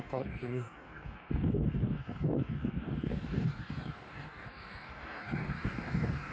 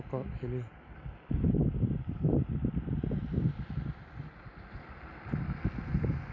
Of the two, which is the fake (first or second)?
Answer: first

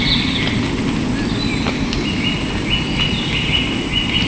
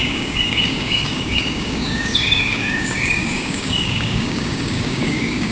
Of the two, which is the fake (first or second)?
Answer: second